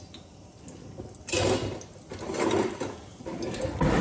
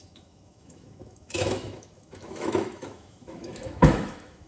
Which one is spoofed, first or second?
second